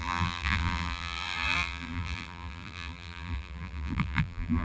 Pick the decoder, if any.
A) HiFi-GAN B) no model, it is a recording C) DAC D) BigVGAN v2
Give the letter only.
D